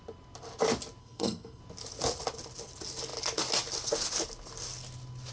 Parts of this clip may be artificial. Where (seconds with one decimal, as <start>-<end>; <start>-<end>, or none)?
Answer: 1.0-1.6

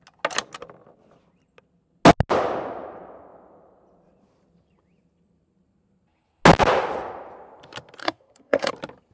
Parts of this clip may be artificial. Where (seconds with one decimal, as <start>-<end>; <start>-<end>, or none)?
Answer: 8.0-8.7

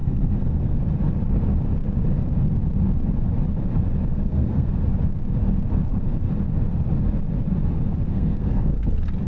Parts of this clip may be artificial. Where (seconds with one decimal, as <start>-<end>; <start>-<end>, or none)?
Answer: 0.0-0.8; 4.1-4.8; 8.1-8.9

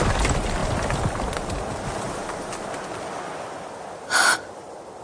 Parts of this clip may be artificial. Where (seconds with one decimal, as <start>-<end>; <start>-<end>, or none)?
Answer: none